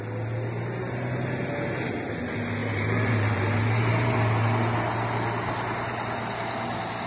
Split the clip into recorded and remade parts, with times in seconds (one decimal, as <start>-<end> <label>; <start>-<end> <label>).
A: 0.0-2.6 recorded; 2.6-4.3 remade; 4.3-7.1 recorded